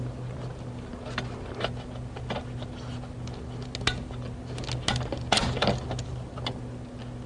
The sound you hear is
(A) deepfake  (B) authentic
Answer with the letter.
B